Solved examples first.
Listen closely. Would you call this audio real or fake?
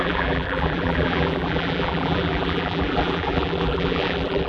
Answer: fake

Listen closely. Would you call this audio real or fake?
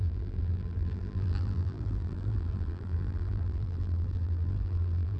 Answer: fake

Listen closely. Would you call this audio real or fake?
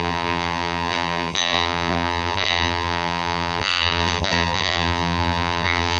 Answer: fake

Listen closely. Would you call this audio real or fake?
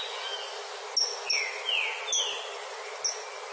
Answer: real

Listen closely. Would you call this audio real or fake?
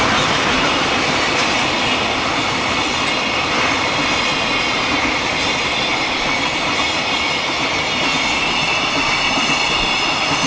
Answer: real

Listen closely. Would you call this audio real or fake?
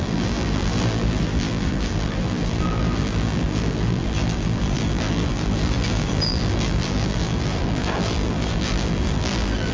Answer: fake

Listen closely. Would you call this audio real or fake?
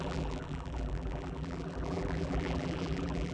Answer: fake